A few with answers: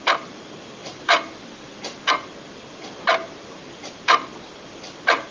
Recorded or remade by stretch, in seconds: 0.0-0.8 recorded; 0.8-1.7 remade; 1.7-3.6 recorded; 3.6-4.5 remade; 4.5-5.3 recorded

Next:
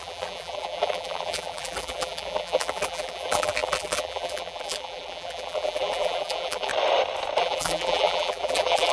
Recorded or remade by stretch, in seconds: 0.0-6.7 remade; 6.7-7.4 recorded; 7.4-8.9 remade

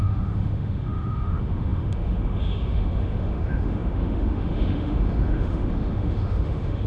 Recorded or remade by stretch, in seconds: 0.0-6.9 remade

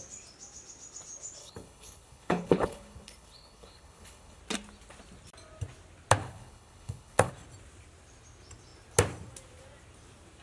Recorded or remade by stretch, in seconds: 0.0-1.4 recorded; 1.4-4.4 remade; 4.4-6.2 recorded; 6.2-7.3 remade; 7.3-10.4 recorded

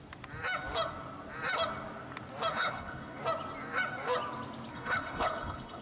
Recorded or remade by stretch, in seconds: 0.0-2.5 recorded; 2.5-3.2 remade; 3.2-4.7 recorded; 4.7-5.8 remade